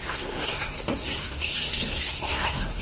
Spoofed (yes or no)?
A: yes